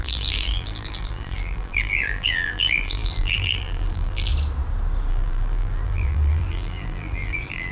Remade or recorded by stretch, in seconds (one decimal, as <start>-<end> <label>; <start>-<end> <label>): 0.0-4.3 remade; 4.3-5.1 recorded; 5.1-7.7 remade